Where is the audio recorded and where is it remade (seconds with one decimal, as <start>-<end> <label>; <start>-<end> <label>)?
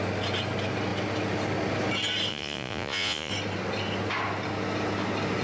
0.0-2.3 recorded; 2.3-3.3 remade; 3.3-5.4 recorded